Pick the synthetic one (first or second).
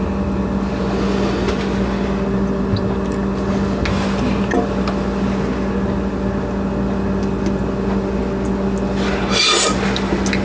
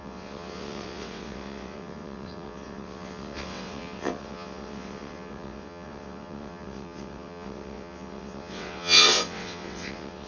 second